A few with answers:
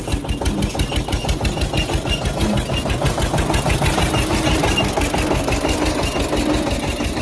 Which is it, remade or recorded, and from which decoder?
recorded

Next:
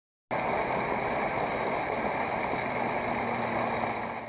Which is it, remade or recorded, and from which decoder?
recorded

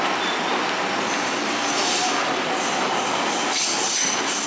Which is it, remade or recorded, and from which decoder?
recorded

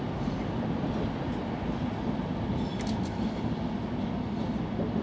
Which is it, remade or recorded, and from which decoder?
recorded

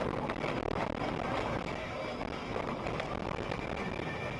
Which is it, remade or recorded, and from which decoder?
recorded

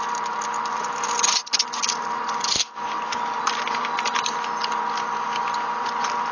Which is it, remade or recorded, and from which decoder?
recorded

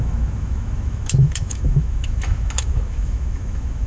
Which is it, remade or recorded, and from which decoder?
remade, autoencoder, DAC-VAE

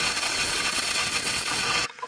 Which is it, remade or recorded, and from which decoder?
remade, vocoder, WaveNeXt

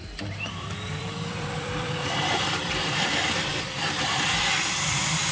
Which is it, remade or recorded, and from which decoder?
remade, vocoder, BigVGAN v2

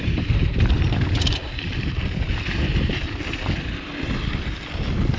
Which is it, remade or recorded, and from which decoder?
remade, vocoder, BigVGAN v2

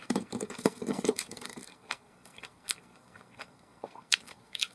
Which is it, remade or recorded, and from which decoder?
remade, codec, SNAC